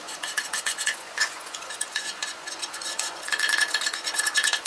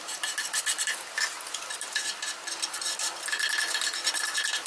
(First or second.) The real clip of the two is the second